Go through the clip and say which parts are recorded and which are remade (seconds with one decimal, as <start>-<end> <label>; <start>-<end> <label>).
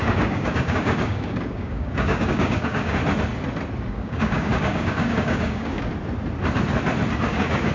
0.0-3.0 remade; 3.0-3.9 recorded; 3.9-5.9 remade; 5.9-7.3 recorded; 7.3-7.7 remade